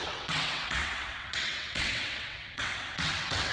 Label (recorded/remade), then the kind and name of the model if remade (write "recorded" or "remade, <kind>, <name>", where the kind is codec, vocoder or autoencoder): remade, vocoder, WaveNeXt